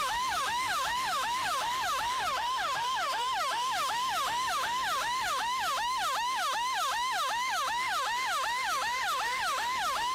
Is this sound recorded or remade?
remade